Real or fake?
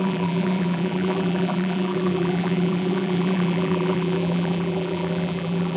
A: fake